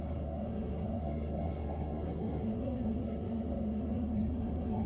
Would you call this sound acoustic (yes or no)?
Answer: no